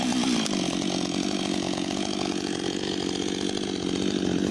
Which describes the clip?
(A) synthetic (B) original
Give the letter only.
B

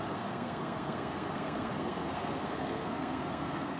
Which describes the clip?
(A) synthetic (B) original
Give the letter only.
A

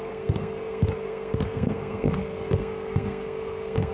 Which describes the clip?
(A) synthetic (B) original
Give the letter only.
A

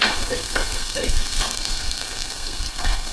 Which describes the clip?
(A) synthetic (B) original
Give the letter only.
A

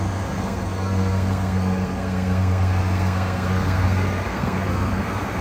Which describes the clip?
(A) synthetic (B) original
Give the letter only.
A